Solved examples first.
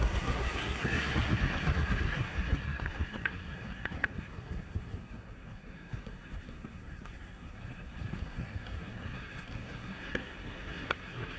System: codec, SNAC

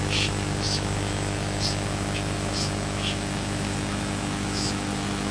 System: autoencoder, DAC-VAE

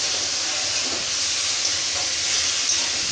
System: none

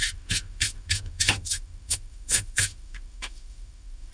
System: autoencoder, DAC-VAE